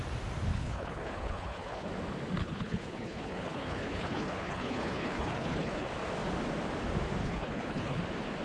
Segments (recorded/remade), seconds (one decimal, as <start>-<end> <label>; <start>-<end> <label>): 0.0-0.5 recorded; 0.5-1.9 remade; 1.9-2.4 recorded; 2.4-5.9 remade; 5.9-7.2 recorded; 7.2-8.0 remade; 8.0-8.4 recorded